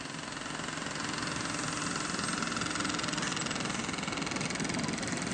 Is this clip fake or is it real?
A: real